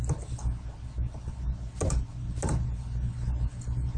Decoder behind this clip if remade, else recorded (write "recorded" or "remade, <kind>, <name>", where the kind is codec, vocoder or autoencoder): recorded